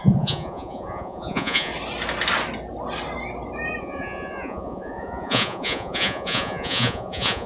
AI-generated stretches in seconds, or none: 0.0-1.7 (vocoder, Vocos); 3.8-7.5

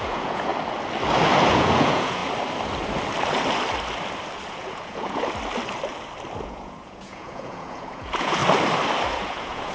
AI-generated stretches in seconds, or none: 0.0-0.5 (vocoder, Vocos); 1.5-2.2; 4.5-5.2; 6.4-8.4; 9.1-9.7

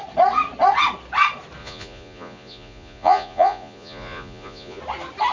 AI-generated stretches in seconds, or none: 1.6-4.8 (vocoder, Vocos)

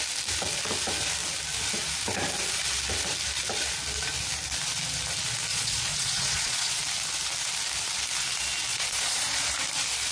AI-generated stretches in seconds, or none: 5.5-6.8 (vocoder, Vocos); 8.7-9.5

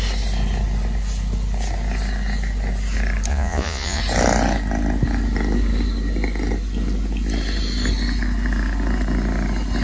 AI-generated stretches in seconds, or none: 3.3-4.0 (vocoder, Vocos)

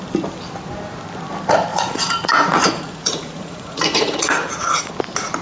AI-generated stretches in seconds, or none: 1.7-4.9 (vocoder, Vocos)

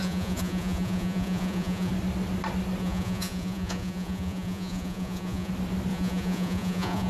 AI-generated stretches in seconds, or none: 0.0-1.9 (vocoder, Vocos); 2.8-5.5; 5.9-7.1

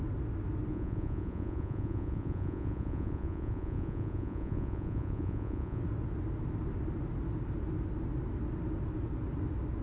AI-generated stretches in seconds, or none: 0.7-5.8 (vocoder, Vocos)